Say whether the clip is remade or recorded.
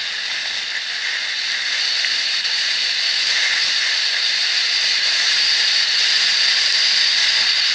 recorded